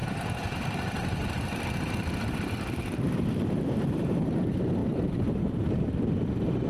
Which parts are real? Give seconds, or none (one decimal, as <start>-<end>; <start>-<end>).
none